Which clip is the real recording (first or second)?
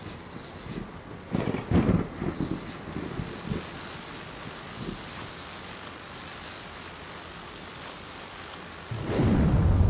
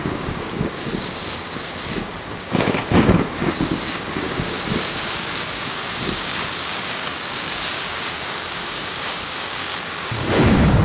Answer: first